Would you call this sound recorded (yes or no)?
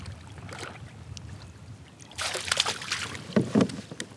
yes